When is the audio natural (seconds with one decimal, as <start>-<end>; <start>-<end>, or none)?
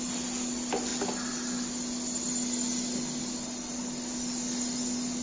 0.0-5.2